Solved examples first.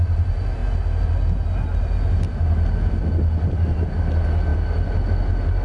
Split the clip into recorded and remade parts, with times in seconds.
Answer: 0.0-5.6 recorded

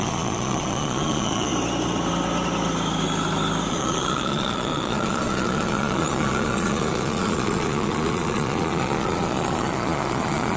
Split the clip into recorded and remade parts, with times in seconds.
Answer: 0.0-1.5 remade; 1.5-3.7 recorded; 3.7-10.6 remade

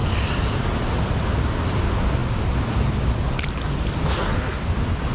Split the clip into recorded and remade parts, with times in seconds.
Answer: 0.0-5.1 recorded

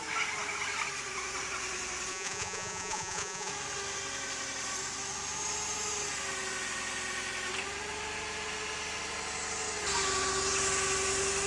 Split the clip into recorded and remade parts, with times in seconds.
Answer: 0.0-2.1 recorded; 2.1-3.5 remade; 3.5-11.5 recorded

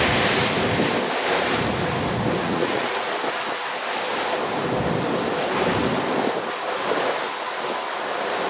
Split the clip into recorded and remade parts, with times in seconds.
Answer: 0.0-2.4 recorded; 2.4-3.1 remade; 3.1-8.5 recorded